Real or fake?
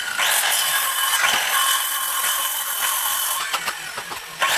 fake